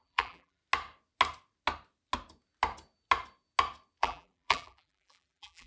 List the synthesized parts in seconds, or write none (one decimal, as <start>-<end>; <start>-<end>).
0.0-0.6; 4.0-5.7